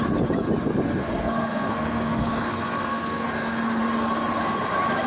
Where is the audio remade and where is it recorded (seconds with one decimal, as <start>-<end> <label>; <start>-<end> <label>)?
0.0-1.0 recorded; 1.0-3.3 remade; 3.3-5.1 recorded